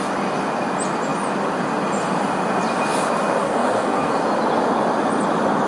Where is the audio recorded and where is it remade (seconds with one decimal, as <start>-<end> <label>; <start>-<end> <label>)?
0.0-3.4 recorded; 3.4-4.2 remade; 4.2-5.7 recorded